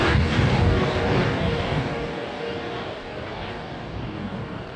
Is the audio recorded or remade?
remade